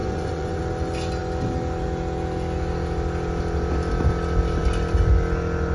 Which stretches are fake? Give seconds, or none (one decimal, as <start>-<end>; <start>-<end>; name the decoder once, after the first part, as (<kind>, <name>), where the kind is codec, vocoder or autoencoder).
0.0-0.6 (vocoder, Vocos)